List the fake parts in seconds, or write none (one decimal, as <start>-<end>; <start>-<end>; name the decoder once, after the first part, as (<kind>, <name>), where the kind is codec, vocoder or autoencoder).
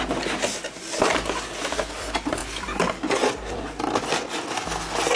none